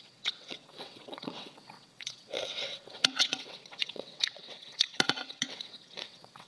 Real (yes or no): no